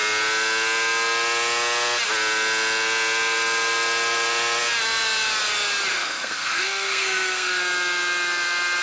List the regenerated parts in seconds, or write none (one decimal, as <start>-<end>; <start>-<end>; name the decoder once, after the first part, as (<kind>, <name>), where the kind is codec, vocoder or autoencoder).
5.9-7.6 (codec, SNAC)